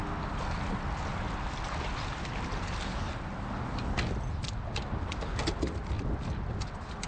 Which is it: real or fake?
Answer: real